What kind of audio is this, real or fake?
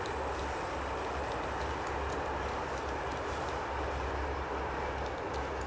real